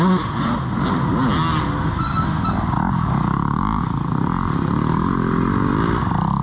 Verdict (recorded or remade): recorded